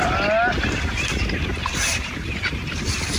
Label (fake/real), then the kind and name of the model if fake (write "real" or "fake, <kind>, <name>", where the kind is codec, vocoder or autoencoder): real